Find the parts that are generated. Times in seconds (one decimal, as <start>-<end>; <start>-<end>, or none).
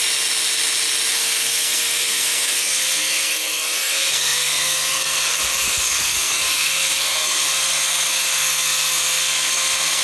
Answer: 1.1-10.0